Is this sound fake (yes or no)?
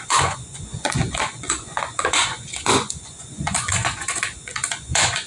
yes